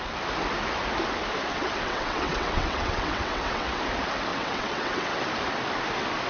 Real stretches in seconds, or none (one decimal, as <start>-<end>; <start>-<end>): 0.0-1.5; 3.8-4.3; 5.2-6.3

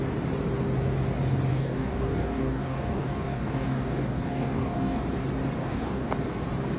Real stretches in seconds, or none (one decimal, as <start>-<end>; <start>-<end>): 0.0-1.5; 5.0-5.6; 6.1-6.8